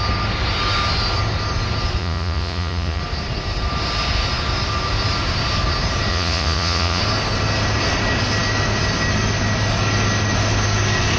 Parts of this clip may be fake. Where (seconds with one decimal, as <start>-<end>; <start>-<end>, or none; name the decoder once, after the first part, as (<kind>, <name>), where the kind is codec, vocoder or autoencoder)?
2.0-3.0 (vocoder, Vocos); 6.1-7.0